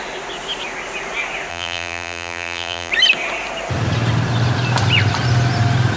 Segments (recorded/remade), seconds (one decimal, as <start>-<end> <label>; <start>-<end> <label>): 0.0-1.5 recorded; 1.5-2.9 remade; 2.9-6.0 recorded